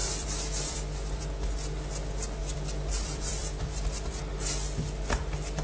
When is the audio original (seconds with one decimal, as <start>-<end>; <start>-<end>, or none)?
1.2-2.4; 4.2-5.6